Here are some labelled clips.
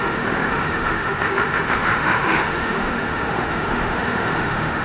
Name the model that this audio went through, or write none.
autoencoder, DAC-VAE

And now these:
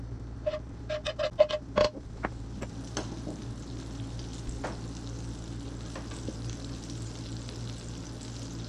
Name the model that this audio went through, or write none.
none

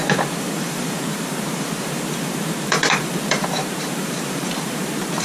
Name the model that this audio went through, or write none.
vocoder, BigVGAN v2